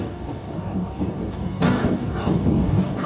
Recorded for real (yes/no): no